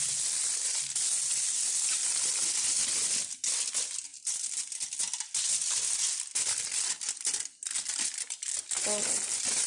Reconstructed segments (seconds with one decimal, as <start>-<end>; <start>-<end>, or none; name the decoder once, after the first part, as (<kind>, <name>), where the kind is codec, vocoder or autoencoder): none